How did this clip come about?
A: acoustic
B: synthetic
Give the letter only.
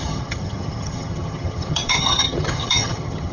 B